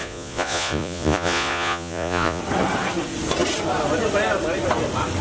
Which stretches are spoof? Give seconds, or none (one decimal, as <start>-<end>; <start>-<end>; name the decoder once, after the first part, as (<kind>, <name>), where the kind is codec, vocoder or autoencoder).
0.0-2.4 (vocoder, Vocos)